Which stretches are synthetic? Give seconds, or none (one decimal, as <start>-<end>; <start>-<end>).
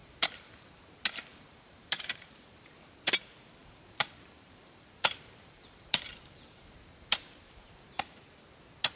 0.0-0.9; 1.3-3.0; 3.6-8.2